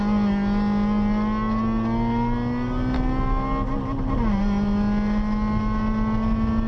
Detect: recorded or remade recorded